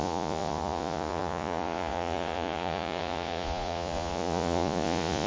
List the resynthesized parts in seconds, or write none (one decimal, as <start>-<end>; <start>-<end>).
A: 0.0-5.3